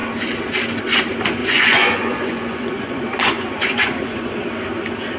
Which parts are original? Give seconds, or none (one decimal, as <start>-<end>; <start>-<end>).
0.0-1.4; 4.5-5.2